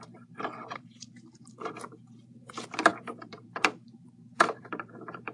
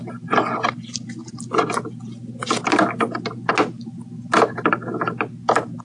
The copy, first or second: first